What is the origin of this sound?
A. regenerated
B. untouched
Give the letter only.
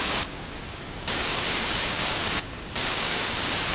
A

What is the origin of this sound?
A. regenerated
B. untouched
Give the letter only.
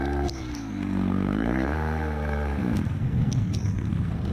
A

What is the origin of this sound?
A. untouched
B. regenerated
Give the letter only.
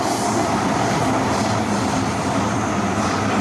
A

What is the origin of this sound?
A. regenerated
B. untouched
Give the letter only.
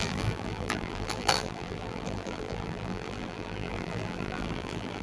A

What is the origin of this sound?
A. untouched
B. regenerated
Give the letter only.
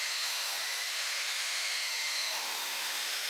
B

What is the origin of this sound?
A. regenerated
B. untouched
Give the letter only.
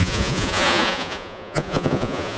A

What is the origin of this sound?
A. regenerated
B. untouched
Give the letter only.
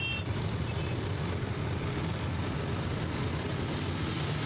B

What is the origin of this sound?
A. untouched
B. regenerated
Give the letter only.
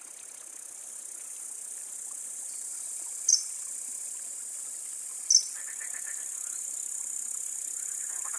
A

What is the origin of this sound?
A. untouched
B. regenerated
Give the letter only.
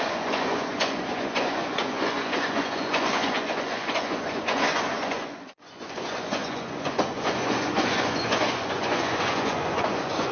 B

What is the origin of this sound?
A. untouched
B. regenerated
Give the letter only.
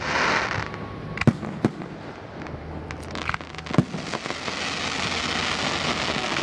A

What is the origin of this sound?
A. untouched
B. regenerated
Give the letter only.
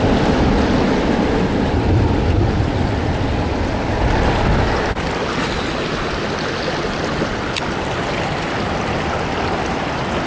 A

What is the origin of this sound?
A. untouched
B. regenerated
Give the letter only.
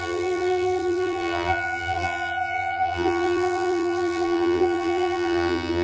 B